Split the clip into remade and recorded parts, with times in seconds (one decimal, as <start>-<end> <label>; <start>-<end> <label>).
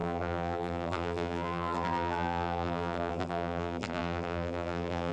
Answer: 0.0-5.1 remade